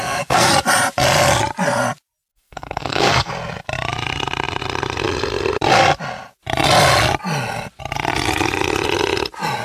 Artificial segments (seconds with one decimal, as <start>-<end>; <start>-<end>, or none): 0.0-0.5; 2.3-3.3